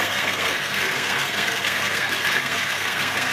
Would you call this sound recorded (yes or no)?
no